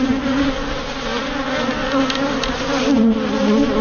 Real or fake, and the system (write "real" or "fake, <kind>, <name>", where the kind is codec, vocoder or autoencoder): real